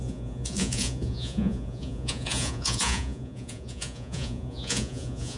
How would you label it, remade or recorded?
remade